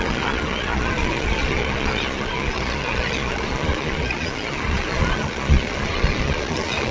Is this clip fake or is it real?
fake